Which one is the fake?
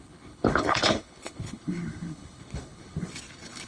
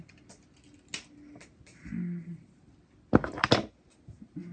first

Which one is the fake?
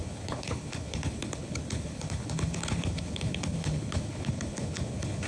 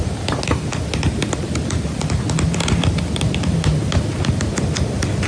first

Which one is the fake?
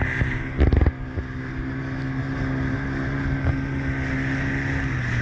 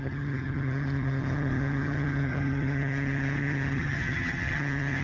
second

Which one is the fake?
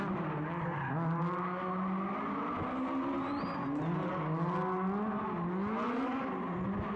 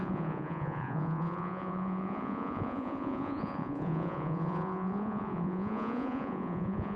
second